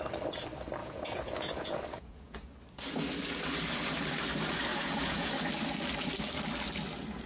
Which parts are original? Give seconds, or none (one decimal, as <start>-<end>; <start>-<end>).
0.0-0.8; 2.5-4.7; 5.3-7.3